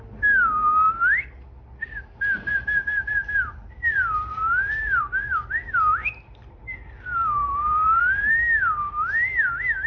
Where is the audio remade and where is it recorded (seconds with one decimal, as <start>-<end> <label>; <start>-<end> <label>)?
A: 0.0-4.3 recorded; 4.3-5.0 remade; 5.0-6.0 recorded; 6.0-7.0 remade; 7.0-7.4 recorded; 7.4-8.0 remade; 8.0-9.9 recorded